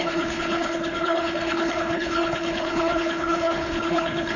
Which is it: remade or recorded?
remade